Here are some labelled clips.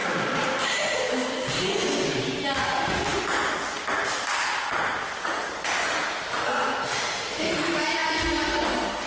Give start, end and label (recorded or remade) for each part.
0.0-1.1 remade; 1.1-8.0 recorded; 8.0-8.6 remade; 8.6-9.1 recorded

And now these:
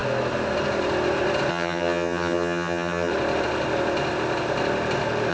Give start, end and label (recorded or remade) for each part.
0.0-1.5 recorded; 1.5-3.1 remade; 3.1-5.3 recorded

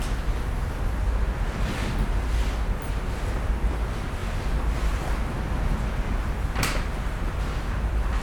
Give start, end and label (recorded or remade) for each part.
0.0-8.2 recorded

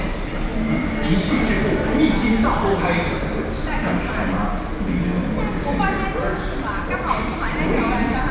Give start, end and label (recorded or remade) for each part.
0.0-8.3 recorded

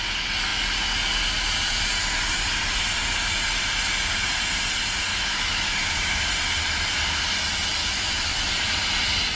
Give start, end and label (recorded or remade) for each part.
0.0-5.1 recorded; 5.1-6.3 remade; 6.3-7.8 recorded; 7.8-8.5 remade; 8.5-9.4 recorded

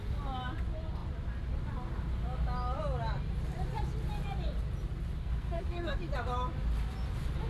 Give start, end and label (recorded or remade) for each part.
0.0-5.2 recorded; 5.2-6.0 remade; 6.0-7.5 recorded